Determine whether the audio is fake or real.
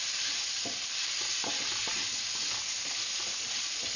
real